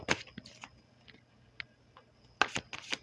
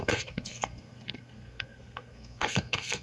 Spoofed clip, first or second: second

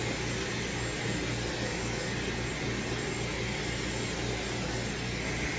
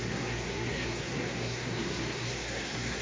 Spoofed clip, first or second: second